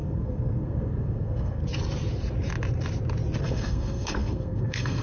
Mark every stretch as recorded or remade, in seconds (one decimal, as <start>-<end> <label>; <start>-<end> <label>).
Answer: 0.0-1.6 remade; 1.6-3.4 recorded; 3.4-5.0 remade

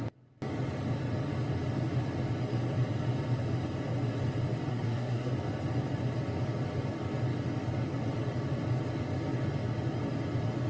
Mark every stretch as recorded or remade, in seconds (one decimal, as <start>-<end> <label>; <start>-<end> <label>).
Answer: 0.0-4.7 recorded; 4.7-5.3 remade; 5.3-10.7 recorded

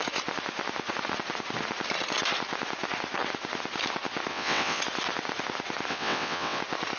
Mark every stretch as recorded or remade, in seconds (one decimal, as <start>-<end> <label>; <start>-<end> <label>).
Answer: 0.0-4.3 recorded; 4.3-4.8 remade; 4.8-5.9 recorded; 5.9-6.6 remade; 6.6-7.0 recorded

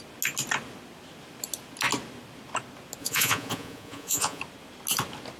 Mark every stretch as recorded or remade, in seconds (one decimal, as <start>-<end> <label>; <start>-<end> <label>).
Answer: 0.0-3.0 recorded; 3.0-4.4 remade; 4.4-5.4 recorded